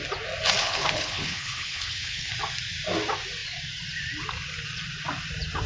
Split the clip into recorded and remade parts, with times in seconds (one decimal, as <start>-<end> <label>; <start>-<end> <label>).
0.0-0.6 recorded; 0.6-2.3 remade; 2.3-5.7 recorded